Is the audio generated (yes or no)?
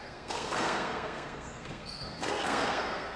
yes